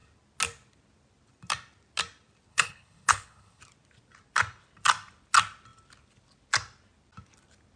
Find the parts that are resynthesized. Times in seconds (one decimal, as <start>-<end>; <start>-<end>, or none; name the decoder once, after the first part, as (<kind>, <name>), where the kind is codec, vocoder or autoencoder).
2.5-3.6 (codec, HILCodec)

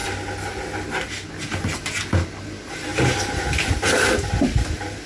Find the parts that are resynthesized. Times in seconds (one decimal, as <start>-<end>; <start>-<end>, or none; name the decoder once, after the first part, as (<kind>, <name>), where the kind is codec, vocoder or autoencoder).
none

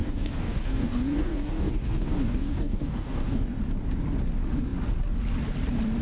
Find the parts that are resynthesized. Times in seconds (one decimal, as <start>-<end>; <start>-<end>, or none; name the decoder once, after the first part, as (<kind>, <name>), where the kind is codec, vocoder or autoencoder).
0.0-3.6 (codec, DAC)